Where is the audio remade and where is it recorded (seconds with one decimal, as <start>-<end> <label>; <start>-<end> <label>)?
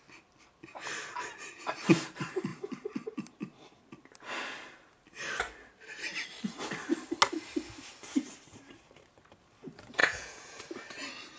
0.0-10.0 recorded; 10.0-10.6 remade; 10.6-11.4 recorded